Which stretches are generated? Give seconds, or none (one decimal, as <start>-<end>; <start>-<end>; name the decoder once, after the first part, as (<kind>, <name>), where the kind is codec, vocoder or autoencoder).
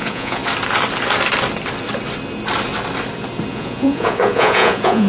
0.0-0.4 (vocoder, Vocos); 3.5-5.1